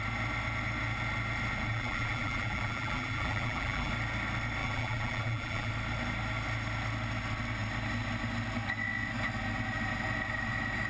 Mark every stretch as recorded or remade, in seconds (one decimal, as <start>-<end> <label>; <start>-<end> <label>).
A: 0.0-1.7 recorded; 1.7-3.9 remade; 3.9-4.6 recorded; 4.6-5.7 remade; 5.7-10.9 recorded